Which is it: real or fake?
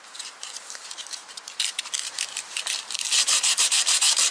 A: fake